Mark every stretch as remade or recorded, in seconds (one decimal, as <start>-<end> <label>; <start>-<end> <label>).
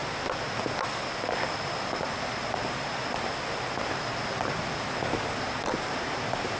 0.0-6.6 recorded